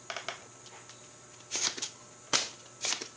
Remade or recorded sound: recorded